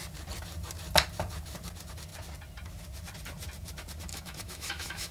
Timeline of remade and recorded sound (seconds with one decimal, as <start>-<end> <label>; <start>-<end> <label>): 0.0-4.1 recorded; 4.1-5.1 remade